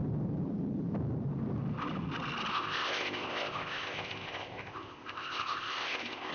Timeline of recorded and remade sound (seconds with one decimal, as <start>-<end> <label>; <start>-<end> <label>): 0.0-2.5 recorded; 2.5-6.3 remade